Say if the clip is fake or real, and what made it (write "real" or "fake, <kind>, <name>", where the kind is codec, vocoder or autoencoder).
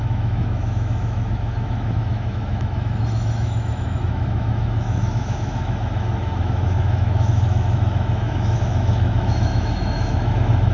fake, autoencoder, DAC-VAE